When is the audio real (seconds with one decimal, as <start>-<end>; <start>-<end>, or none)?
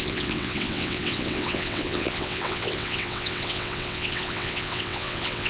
none